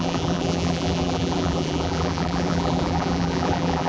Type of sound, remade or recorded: remade